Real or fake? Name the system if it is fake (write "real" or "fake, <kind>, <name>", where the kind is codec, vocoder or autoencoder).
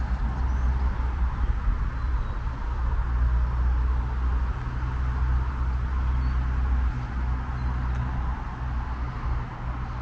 real